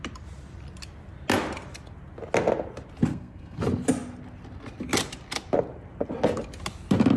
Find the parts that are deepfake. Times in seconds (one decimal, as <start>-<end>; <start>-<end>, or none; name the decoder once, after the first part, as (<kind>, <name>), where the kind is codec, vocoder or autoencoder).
3.1-3.6 (codec, SNAC)